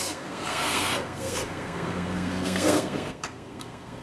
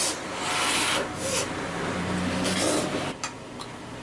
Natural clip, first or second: second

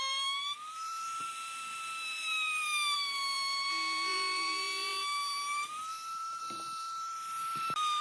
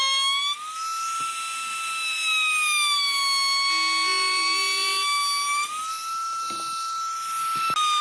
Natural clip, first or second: second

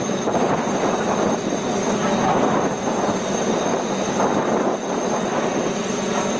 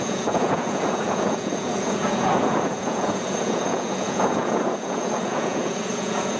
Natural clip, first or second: first